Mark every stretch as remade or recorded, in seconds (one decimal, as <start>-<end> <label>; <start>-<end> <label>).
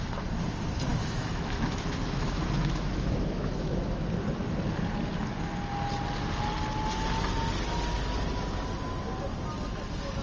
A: 0.0-0.9 recorded; 0.9-4.0 remade; 4.0-10.2 recorded